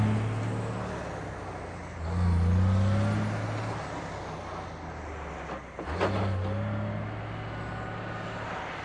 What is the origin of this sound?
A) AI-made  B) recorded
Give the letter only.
B